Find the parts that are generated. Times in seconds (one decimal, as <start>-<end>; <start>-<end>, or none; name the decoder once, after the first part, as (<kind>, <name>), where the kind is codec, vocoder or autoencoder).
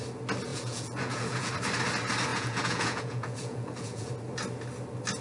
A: 0.5-1.5 (vocoder, Vocos); 2.3-4.1